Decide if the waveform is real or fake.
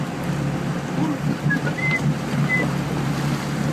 real